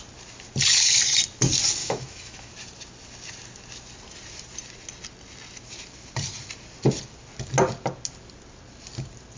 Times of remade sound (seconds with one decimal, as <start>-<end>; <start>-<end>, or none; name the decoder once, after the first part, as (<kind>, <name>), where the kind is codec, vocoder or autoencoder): 1.8-2.5 (autoencoder, DAC-VAE)